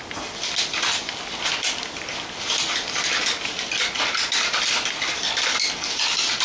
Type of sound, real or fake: real